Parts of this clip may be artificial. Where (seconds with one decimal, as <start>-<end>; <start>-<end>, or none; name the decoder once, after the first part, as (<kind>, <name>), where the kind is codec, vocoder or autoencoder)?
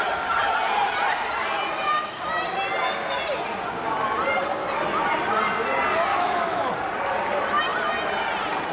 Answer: 6.1-6.7 (autoencoder, DAC-VAE)